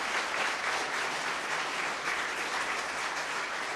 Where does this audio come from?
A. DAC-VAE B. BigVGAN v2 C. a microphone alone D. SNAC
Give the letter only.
C